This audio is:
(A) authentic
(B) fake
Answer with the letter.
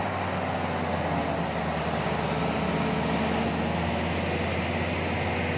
A